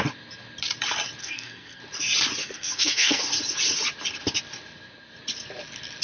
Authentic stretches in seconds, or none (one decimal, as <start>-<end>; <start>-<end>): 0.0-1.2; 1.8-2.4; 3.2-6.0